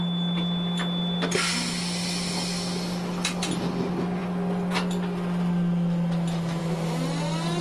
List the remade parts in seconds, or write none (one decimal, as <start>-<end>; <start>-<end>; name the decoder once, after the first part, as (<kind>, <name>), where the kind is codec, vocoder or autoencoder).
none